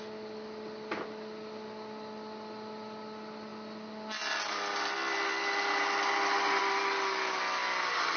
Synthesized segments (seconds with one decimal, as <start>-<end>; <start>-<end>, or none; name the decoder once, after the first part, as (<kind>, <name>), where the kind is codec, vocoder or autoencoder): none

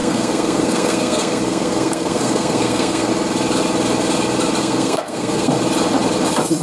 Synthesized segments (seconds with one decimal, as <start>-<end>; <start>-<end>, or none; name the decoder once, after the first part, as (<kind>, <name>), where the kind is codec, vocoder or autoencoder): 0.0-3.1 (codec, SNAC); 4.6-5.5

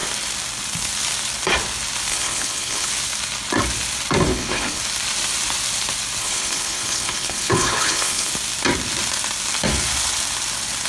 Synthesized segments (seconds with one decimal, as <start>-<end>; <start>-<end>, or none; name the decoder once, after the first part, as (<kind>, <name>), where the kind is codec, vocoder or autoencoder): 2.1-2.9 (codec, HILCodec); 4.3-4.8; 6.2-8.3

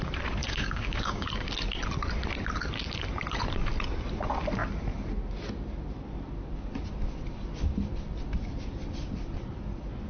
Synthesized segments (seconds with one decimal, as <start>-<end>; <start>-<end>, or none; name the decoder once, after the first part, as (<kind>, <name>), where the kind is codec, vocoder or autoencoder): 0.4-1.3 (codec, DAC)

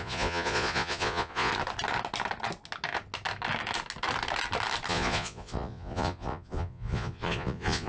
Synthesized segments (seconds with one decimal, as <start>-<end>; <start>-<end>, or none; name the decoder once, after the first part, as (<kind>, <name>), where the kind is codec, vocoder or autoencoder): 0.0-1.5 (vocoder, Vocos); 4.9-7.9